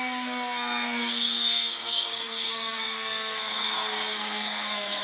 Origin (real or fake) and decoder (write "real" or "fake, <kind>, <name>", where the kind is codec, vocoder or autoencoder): fake, codec, SNAC